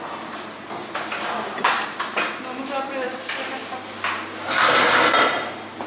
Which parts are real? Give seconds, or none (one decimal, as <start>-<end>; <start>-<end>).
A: 0.0-5.9